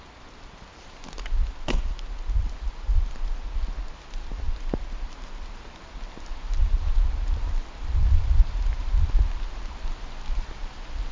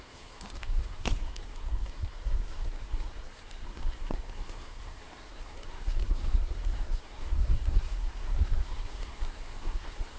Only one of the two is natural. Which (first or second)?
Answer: first